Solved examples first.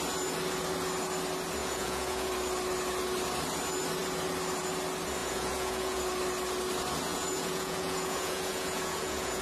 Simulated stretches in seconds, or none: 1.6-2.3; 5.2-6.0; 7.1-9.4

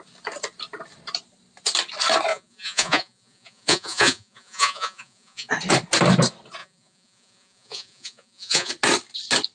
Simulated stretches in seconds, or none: 2.3-5.5; 6.6-8.7

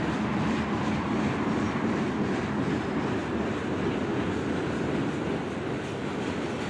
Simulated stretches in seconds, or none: none

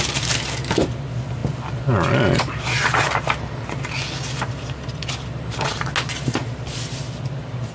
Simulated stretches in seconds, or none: none

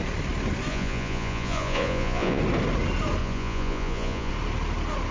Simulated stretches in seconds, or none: 0.7-2.4; 3.2-4.3

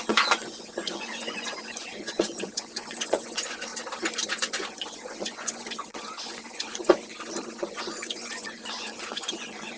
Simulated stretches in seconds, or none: 0.0-3.7; 4.3-7.1; 7.6-9.8